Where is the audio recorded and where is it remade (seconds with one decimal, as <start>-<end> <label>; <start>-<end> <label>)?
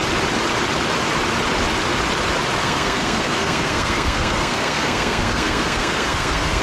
0.0-2.6 recorded; 2.6-6.6 remade